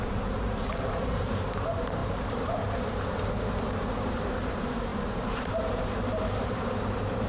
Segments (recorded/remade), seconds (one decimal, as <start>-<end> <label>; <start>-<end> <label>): 0.0-7.3 remade